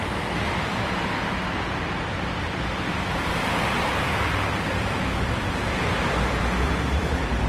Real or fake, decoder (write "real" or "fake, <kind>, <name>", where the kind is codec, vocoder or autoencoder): fake, vocoder, BigVGAN v2